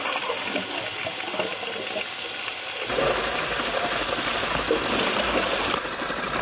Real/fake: real